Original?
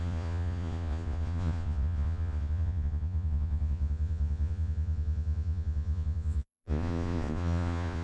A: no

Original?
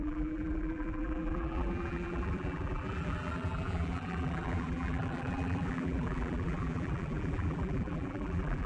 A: no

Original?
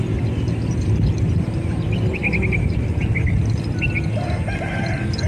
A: yes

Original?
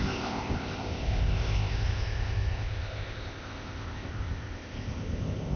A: no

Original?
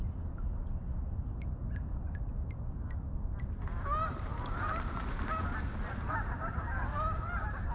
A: yes